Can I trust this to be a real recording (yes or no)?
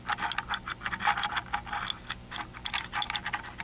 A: yes